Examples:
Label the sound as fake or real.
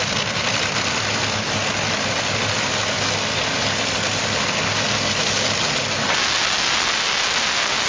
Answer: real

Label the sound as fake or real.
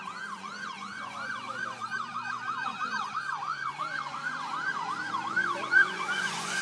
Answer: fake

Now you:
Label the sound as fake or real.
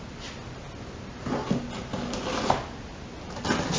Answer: real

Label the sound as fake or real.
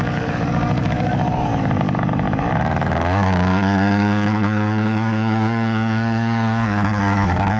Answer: fake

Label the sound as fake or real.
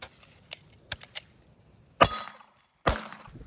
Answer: real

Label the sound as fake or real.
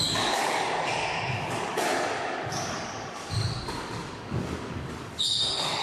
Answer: fake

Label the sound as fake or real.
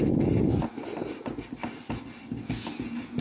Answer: real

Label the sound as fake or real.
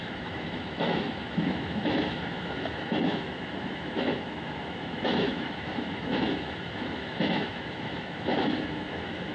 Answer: fake